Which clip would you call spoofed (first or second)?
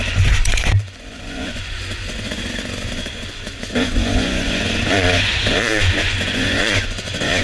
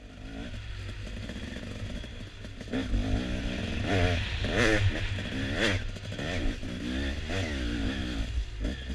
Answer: first